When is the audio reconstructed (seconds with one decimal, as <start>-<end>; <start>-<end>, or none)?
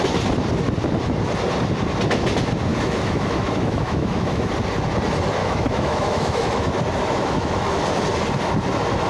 2.7-4.5; 5.4-6.7; 7.2-7.8